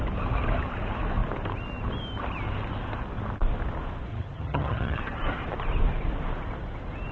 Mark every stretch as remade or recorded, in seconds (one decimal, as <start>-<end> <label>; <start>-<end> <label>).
0.0-4.1 recorded; 4.1-5.0 remade; 5.0-7.1 recorded